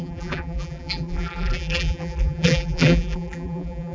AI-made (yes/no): yes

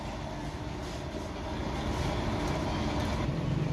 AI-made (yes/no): no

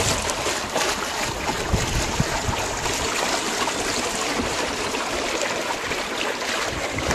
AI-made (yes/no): no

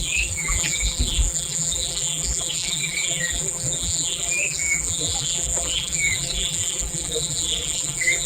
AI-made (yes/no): yes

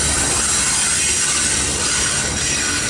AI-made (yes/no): no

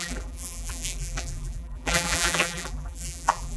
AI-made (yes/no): yes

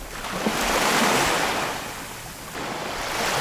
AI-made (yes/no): no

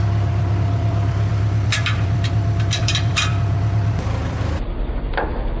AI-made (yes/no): yes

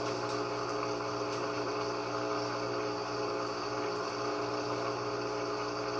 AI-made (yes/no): no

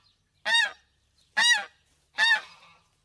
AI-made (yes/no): no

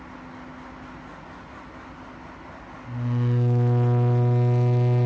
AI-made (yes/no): no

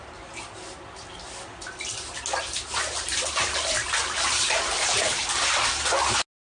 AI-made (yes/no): no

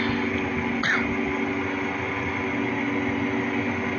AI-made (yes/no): no